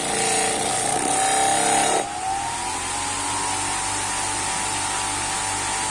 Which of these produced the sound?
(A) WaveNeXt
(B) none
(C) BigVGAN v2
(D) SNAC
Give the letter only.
B